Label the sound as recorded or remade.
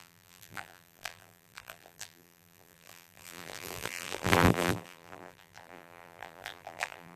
remade